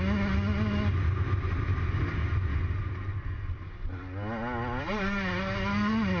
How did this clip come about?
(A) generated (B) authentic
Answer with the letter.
B